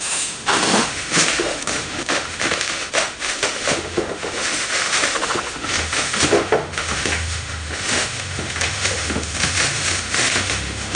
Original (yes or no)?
no